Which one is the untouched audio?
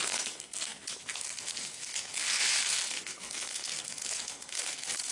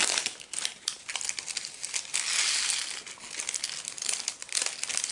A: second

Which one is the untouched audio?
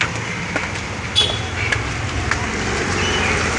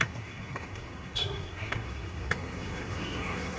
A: first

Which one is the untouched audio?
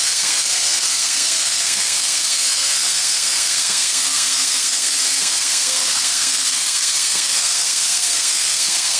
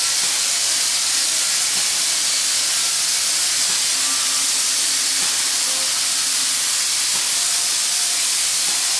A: second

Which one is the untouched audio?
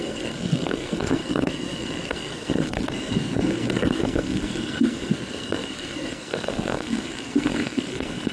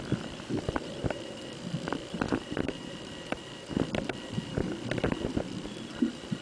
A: second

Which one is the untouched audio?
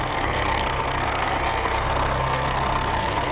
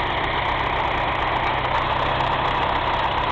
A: second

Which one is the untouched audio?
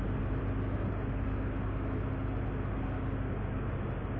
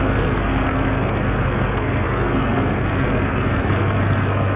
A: first